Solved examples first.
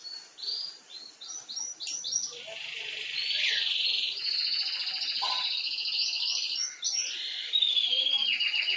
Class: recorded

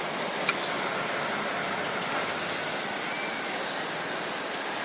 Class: recorded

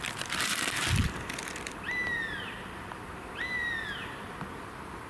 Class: recorded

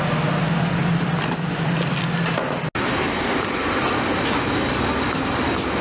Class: recorded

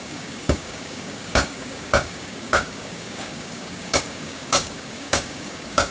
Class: remade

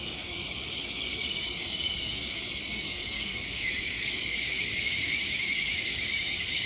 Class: remade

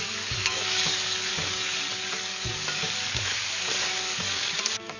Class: remade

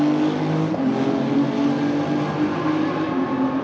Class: recorded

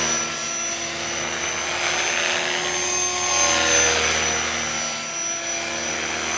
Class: recorded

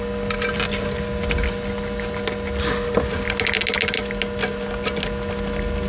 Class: recorded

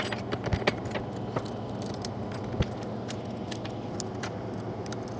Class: recorded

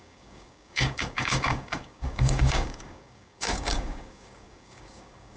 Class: remade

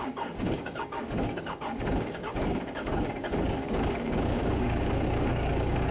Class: remade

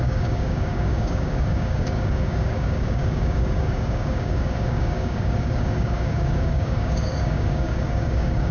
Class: remade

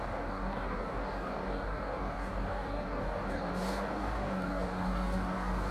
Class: remade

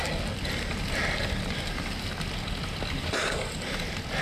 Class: recorded